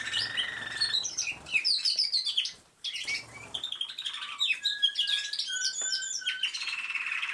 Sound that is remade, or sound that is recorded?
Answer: remade